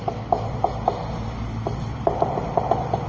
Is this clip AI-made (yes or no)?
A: yes